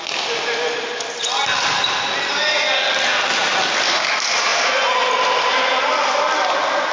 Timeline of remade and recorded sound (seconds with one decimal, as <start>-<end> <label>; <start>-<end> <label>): 0.0-6.9 recorded